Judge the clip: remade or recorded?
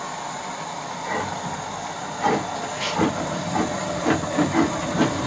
recorded